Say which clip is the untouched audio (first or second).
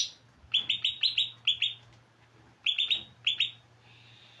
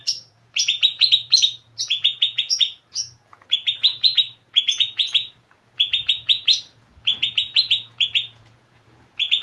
first